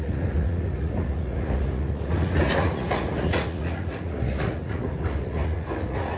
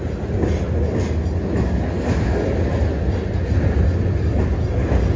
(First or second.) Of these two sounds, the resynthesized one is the first